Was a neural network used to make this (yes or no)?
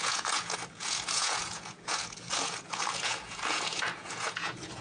yes